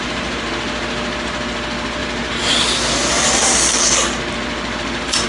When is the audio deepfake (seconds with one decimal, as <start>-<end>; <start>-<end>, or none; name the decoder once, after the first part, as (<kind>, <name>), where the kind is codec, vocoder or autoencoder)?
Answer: 0.0-0.5 (vocoder, BigVGAN v2); 2.0-2.8